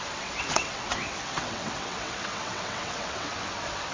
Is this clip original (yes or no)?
no